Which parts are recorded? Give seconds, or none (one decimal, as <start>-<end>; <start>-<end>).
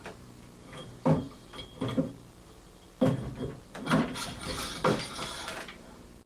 1.4-5.0